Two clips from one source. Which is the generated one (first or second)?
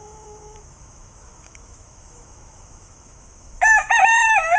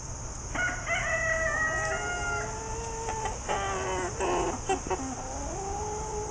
first